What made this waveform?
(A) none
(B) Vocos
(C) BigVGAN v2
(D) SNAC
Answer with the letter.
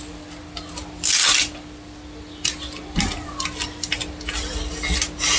A